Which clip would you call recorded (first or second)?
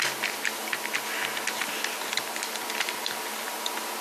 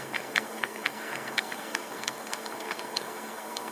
first